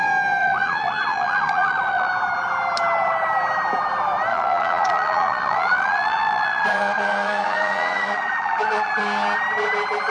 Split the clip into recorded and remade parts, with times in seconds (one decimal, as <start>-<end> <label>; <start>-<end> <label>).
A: 0.0-0.4 recorded; 0.4-2.1 remade; 2.1-4.3 recorded; 4.3-8.9 remade; 8.9-10.1 recorded